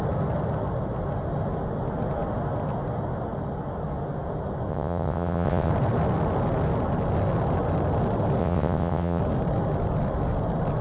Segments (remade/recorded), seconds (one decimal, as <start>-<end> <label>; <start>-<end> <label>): 0.0-4.7 recorded; 4.7-5.7 remade; 5.7-8.4 recorded; 8.4-9.2 remade; 9.2-10.8 recorded